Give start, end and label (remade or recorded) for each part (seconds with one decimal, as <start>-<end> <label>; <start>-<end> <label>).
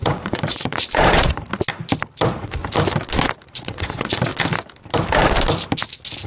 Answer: 0.0-1.4 remade; 1.4-2.2 recorded; 2.2-2.6 remade; 2.6-3.6 recorded; 3.6-4.3 remade; 4.3-6.3 recorded